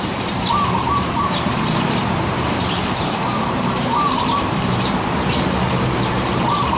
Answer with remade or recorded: remade